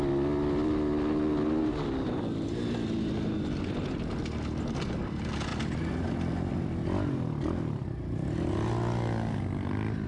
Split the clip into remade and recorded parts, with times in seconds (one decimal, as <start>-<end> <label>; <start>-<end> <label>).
0.0-10.1 recorded